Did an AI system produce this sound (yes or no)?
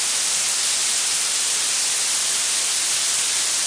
no